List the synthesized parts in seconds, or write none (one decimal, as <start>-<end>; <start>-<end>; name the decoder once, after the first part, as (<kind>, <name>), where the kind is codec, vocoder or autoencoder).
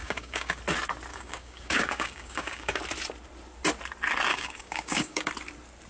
0.0-0.6 (codec, DAC); 1.1-2.8; 4.3-5.3